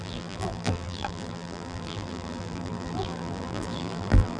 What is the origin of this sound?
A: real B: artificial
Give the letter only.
B